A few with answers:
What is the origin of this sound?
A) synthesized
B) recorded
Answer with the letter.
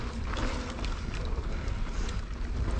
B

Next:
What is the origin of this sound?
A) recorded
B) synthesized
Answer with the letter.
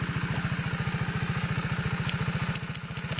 A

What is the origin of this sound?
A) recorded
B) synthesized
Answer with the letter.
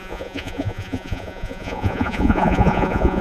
B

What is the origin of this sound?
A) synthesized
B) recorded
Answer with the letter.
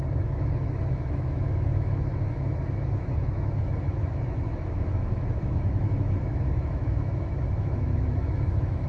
A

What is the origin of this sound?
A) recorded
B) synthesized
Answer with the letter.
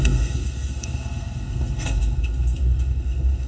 B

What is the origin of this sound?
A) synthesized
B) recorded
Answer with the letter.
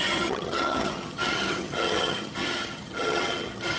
A